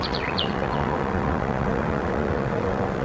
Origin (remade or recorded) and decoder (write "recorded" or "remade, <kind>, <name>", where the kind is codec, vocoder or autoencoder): remade, vocoder, WaveNeXt